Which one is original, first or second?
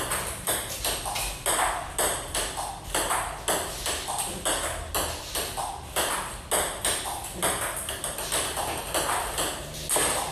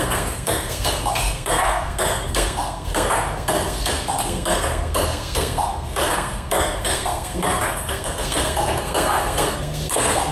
first